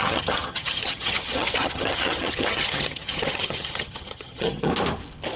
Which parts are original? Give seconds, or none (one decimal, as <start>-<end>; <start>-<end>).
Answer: 4.7-5.4